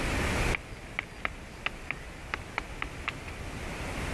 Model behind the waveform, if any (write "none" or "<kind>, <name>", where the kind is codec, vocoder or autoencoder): none